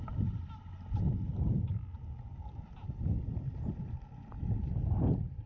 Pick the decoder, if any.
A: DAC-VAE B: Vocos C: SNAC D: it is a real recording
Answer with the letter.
D